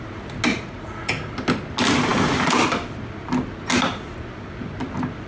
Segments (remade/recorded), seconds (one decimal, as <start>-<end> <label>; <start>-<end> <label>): 0.0-0.5 recorded; 0.5-1.1 remade; 1.1-5.3 recorded